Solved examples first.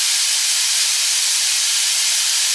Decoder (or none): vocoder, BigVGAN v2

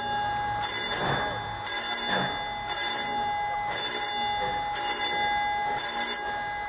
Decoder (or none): none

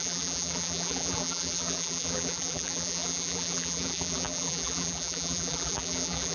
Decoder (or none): vocoder, BigVGAN v2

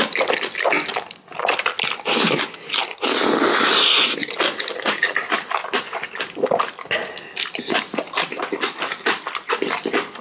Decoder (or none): none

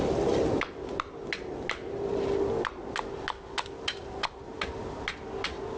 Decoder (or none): none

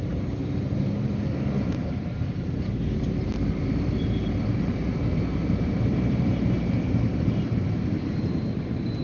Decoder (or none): vocoder, BigVGAN v2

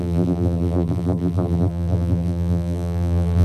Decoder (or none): vocoder, BigVGAN v2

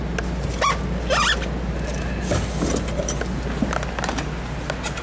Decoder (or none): none